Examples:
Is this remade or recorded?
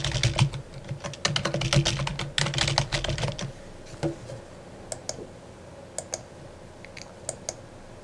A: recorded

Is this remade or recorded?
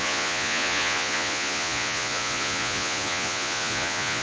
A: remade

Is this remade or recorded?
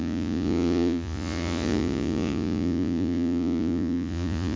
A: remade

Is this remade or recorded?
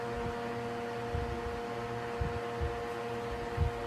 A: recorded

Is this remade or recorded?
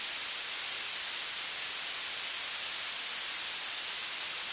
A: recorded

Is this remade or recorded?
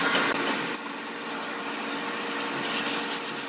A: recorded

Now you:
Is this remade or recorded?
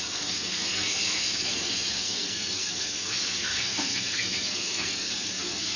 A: remade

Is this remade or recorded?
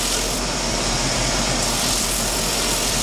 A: remade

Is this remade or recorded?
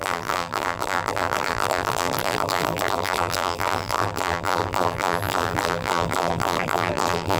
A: remade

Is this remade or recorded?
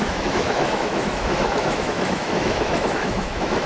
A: remade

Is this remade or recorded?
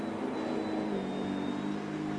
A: recorded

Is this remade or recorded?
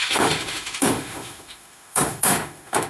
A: remade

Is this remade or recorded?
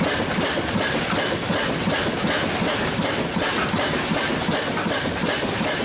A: recorded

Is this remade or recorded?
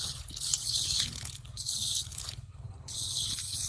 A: remade